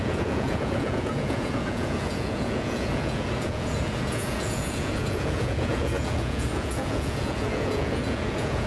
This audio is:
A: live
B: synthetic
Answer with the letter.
B